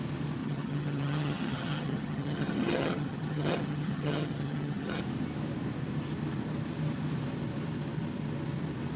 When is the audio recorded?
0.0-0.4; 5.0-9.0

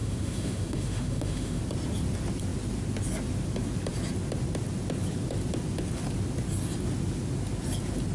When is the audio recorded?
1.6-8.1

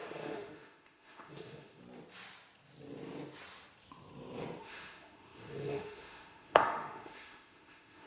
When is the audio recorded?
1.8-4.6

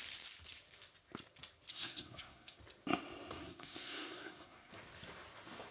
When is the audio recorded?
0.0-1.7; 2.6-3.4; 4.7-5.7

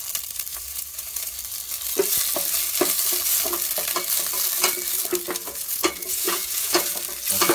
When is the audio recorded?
0.0-0.5; 1.3-5.4; 7.0-7.5

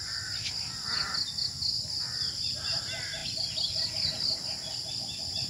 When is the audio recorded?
0.0-5.5